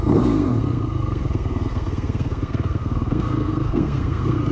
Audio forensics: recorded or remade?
remade